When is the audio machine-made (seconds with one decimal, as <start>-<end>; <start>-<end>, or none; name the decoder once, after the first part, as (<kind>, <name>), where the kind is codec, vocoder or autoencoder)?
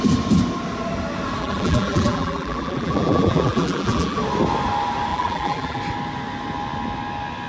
1.4-4.2 (vocoder, BigVGAN v2); 5.1-5.8